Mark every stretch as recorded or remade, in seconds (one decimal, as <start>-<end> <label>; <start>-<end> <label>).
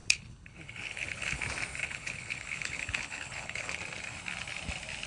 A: 0.0-1.4 remade; 1.4-1.8 recorded; 1.8-3.8 remade; 3.8-5.1 recorded